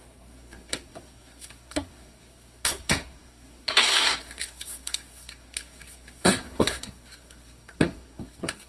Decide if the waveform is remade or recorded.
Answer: remade